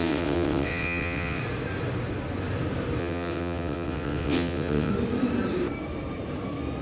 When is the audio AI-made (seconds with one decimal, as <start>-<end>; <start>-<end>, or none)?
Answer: 0.0-1.4; 3.0-4.9